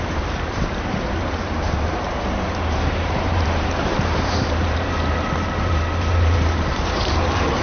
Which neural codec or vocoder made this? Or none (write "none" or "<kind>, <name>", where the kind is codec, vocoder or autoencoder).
vocoder, BigVGAN v2